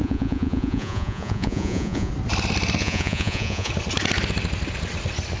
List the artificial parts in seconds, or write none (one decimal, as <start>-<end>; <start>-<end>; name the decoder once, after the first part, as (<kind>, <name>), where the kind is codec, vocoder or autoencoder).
0.0-2.1 (vocoder, Vocos); 2.8-3.7